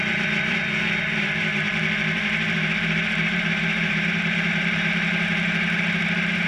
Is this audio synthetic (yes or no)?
yes